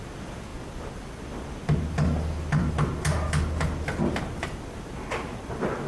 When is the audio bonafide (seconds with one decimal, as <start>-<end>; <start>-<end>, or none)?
0.0-5.9